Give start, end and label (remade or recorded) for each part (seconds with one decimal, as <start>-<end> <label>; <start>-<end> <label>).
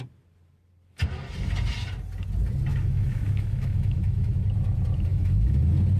0.0-2.7 recorded; 2.7-4.3 remade; 4.3-5.1 recorded; 5.1-5.6 remade; 5.6-6.0 recorded